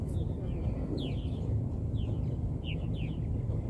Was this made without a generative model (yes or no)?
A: yes